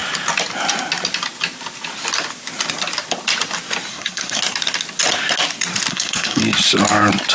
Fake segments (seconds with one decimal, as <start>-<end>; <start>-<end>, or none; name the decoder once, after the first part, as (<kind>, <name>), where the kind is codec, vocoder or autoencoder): 3.9-4.4 (codec, SNAC); 5.9-6.4